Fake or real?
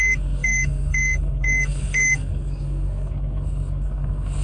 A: fake